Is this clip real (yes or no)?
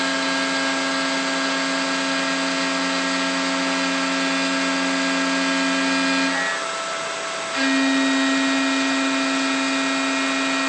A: yes